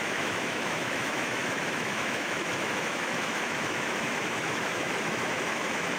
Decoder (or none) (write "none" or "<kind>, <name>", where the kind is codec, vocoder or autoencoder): autoencoder, DAC-VAE